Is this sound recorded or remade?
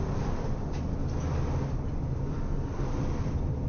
recorded